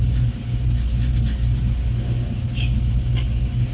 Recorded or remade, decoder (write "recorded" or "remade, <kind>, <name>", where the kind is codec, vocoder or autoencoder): recorded